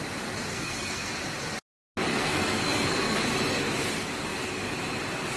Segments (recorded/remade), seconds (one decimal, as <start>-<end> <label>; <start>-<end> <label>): 0.0-0.5 recorded; 0.5-1.1 remade; 1.1-2.1 recorded; 2.1-3.2 remade; 3.2-5.4 recorded